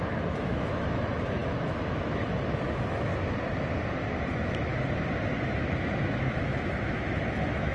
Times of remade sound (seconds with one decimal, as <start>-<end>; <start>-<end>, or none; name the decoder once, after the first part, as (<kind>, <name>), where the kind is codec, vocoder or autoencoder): 0.0-3.1 (autoencoder, DAC-VAE); 4.3-4.7; 5.6-7.7